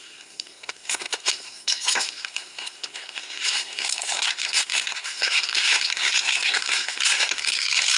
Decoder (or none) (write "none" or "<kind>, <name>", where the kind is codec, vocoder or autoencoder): codec, SNAC